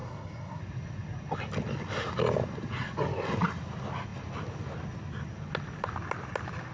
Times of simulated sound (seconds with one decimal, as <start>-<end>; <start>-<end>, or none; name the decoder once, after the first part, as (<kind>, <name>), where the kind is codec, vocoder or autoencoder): 0.0-0.6 (codec, SNAC)